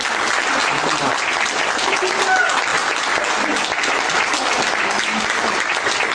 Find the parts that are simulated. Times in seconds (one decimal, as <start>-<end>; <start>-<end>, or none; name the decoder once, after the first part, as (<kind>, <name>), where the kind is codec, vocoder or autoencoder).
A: none